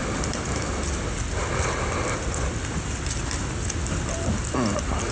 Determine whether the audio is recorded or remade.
recorded